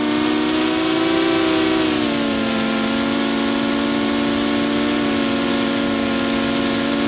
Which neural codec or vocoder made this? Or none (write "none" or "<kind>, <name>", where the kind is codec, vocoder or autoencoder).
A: none